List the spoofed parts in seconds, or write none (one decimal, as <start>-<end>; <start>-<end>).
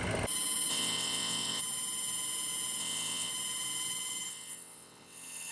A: 0.7-1.6; 2.8-3.3; 4.3-5.5